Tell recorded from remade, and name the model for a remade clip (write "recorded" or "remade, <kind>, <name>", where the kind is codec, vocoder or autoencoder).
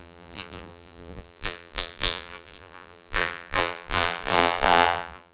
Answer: remade, vocoder, BigVGAN v2